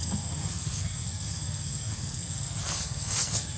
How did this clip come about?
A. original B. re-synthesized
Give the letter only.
B